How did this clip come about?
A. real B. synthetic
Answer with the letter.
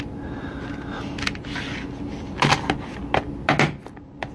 A